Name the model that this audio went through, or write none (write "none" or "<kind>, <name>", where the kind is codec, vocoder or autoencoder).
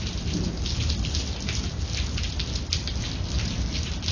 none